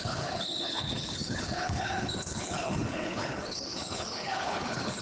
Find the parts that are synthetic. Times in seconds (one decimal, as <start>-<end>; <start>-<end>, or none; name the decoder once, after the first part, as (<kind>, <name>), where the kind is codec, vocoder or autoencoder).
0.0-5.0 (codec, HILCodec)